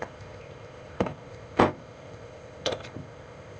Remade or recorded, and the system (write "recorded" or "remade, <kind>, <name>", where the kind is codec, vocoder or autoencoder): remade, codec, ZipCodec